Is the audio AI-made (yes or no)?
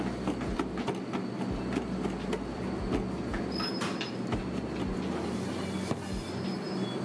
no